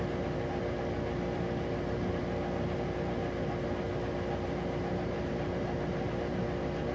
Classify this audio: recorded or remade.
recorded